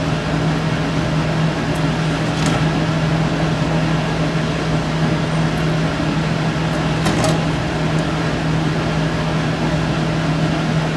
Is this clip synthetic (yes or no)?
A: no